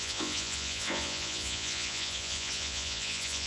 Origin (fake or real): fake